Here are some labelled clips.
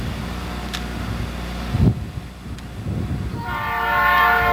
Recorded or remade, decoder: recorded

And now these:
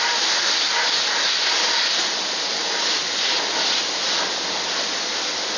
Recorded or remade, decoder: remade, vocoder, BigVGAN v2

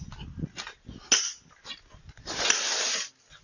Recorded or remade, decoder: recorded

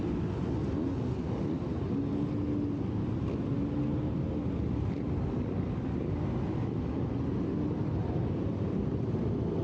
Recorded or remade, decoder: recorded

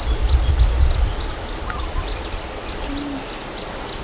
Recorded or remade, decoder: recorded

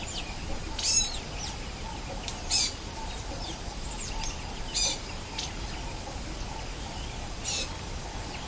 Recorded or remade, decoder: recorded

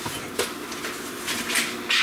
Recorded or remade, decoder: recorded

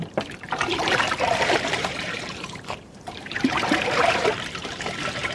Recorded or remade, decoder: remade, vocoder, BigVGAN v2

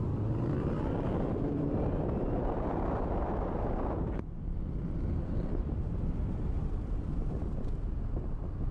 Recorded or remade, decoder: remade, vocoder, BigVGAN v2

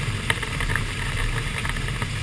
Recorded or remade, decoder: remade, vocoder, BigVGAN v2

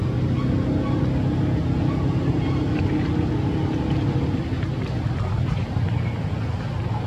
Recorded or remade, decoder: recorded